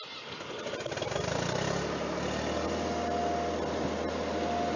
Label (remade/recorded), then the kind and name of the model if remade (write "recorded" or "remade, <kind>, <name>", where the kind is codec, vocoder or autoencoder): recorded